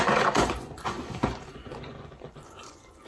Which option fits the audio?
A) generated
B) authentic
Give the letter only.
A